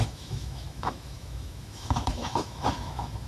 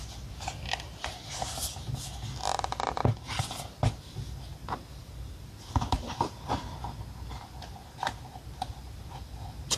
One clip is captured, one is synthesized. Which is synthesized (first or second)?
first